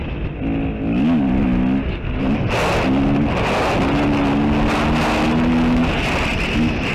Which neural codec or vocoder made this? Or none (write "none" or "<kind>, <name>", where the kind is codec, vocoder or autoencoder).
none